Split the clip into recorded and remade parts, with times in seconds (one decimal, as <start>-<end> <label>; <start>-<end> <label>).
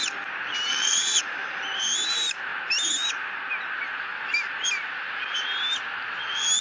0.0-0.7 recorded; 0.7-1.2 remade; 1.2-6.6 recorded